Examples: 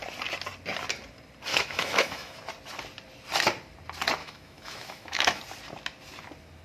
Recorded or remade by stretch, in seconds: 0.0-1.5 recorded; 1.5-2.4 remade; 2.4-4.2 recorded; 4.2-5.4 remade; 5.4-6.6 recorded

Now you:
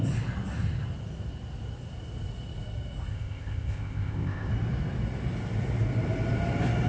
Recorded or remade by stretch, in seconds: 0.0-3.1 recorded; 3.1-4.5 remade; 4.5-6.9 recorded

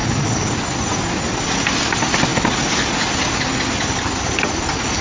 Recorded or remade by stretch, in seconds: 0.0-5.0 recorded

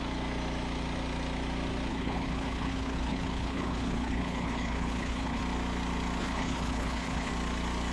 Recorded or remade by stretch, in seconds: 0.0-1.9 recorded; 1.9-5.4 remade; 5.4-6.2 recorded; 6.2-7.3 remade; 7.3-7.9 recorded

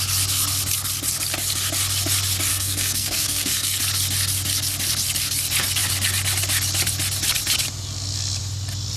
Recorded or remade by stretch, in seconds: 0.0-2.5 recorded; 2.5-3.8 remade; 3.8-9.0 recorded

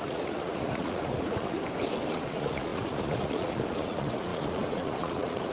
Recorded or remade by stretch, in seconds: 0.0-1.6 remade; 1.6-2.1 recorded; 2.1-5.5 remade

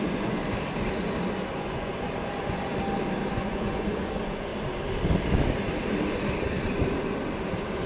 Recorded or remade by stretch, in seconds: 0.0-0.4 remade; 0.4-1.6 recorded; 1.6-2.7 remade; 2.7-3.3 recorded; 3.3-4.5 remade; 4.5-7.9 recorded